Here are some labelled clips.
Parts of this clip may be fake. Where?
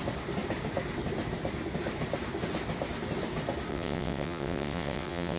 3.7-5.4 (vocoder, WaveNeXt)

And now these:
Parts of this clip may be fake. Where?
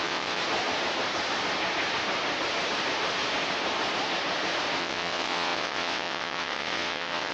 0.0-0.4 (vocoder, WaveNeXt); 4.8-7.3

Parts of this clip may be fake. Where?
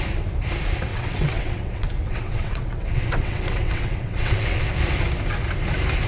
0.9-4.6 (vocoder, WaveNeXt)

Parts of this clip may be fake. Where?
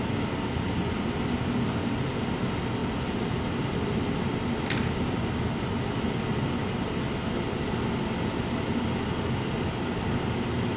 none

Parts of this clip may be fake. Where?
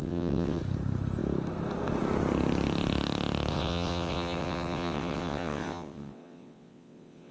0.0-0.6 (vocoder, WaveNeXt); 3.5-7.3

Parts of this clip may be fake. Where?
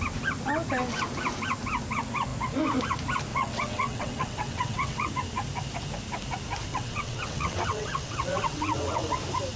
3.3-5.1 (vocoder, WaveNeXt); 6.7-9.1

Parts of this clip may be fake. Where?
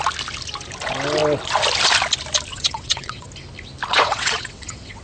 2.5-3.3 (vocoder, WaveNeXt); 3.9-5.0